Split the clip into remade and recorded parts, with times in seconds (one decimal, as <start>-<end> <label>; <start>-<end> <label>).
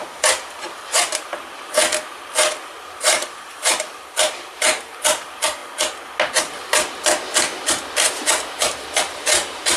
0.0-1.9 remade; 1.9-2.8 recorded; 2.8-5.6 remade; 5.6-8.1 recorded; 8.1-9.8 remade